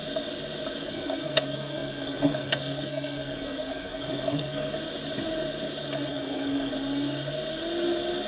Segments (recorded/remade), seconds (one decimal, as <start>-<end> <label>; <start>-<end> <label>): 0.0-0.8 recorded; 0.8-4.7 remade; 4.7-6.1 recorded; 6.1-6.7 remade; 6.7-8.3 recorded